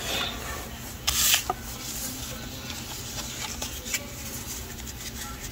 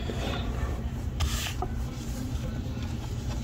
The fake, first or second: second